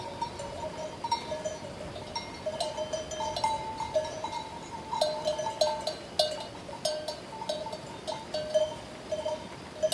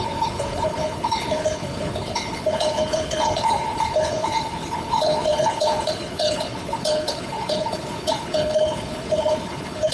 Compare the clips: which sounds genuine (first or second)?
first